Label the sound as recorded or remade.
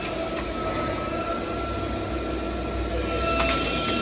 recorded